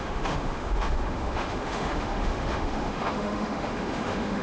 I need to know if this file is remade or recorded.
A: remade